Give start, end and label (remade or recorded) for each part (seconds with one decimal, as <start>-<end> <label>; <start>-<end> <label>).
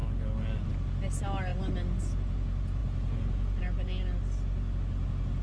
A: 0.0-5.4 recorded